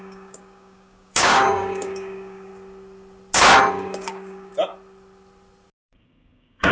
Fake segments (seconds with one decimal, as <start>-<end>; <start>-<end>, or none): 0.0-2.5; 3.7-4.5; 5.8-6.7